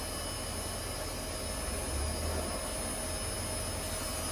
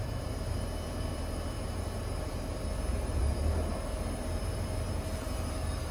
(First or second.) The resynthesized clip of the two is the second